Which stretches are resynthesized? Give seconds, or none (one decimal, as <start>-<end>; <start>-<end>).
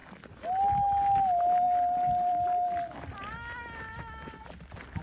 none